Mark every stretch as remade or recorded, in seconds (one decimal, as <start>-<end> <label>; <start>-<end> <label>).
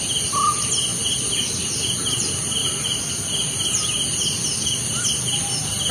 0.0-0.9 recorded; 0.9-2.0 remade; 2.0-2.6 recorded; 2.6-3.1 remade; 3.1-5.9 recorded